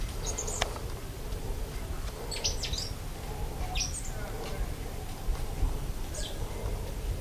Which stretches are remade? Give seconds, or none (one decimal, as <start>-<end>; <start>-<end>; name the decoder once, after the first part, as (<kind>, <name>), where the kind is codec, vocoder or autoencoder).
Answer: 5.3-6.6 (vocoder, BigVGAN v2)